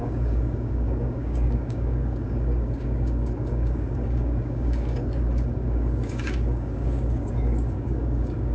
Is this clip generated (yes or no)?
yes